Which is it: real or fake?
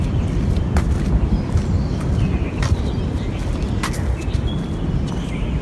real